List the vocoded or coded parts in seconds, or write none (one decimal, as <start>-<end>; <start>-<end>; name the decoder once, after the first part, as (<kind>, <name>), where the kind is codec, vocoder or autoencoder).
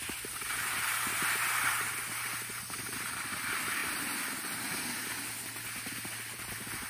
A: none